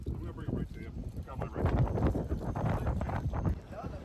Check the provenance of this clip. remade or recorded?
remade